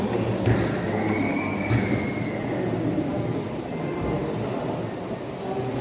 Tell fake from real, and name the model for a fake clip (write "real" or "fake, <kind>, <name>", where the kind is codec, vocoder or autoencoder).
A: real